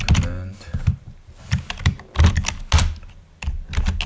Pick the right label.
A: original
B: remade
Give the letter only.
A